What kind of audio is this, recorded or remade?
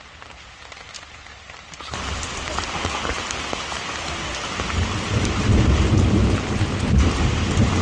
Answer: recorded